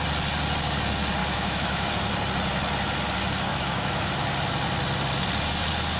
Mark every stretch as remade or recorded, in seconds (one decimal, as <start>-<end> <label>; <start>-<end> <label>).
0.0-1.2 recorded; 1.2-1.9 remade; 1.9-3.5 recorded; 3.5-4.1 remade; 4.1-6.0 recorded